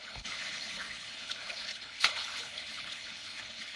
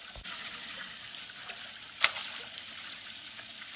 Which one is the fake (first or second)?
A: first